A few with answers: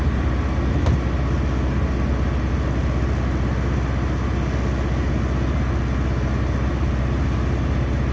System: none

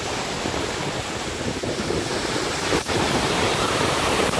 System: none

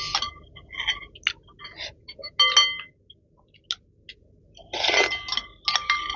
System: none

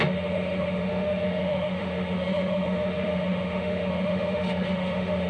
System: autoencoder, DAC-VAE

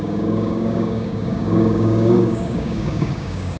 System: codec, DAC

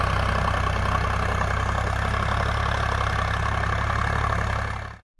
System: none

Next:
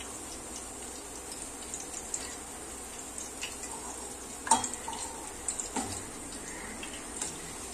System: none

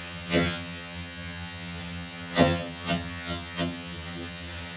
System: vocoder, HiFi-GAN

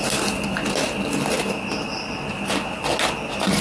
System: none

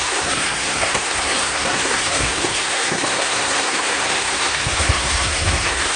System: codec, SNAC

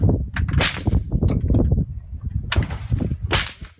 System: none